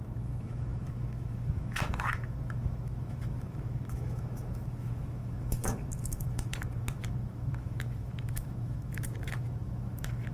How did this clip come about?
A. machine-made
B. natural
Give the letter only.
A